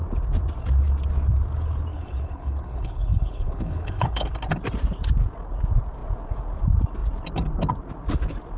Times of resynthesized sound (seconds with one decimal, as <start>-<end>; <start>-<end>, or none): 1.9-4.3